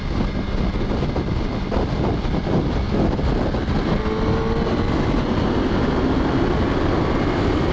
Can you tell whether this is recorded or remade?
recorded